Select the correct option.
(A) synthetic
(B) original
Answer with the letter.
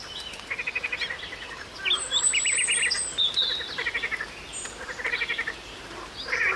B